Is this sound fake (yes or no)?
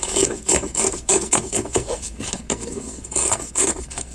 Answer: yes